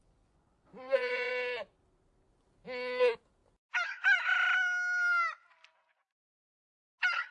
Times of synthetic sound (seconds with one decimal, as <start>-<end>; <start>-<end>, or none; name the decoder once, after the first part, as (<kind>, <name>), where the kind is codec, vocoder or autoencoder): 0.0-1.3 (vocoder, Vocos)